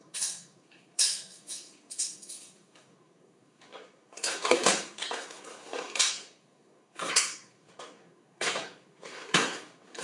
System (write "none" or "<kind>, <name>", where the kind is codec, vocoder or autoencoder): codec, SNAC